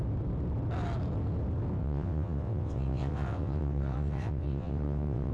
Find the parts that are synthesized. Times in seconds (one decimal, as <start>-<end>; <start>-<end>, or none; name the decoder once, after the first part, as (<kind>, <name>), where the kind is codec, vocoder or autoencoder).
1.8-5.3 (vocoder, WaveNeXt)